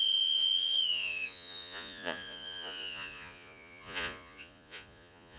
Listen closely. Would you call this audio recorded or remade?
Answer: remade